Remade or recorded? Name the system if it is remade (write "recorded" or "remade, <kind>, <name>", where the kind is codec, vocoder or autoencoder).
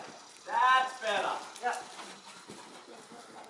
recorded